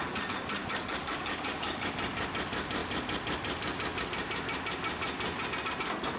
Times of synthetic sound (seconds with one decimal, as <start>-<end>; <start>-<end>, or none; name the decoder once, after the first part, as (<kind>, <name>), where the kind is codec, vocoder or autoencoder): 0.6-1.9 (codec, DAC)